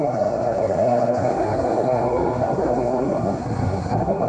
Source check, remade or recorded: remade